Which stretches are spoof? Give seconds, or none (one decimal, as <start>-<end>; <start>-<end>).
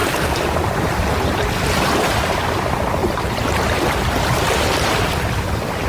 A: 3.0-4.6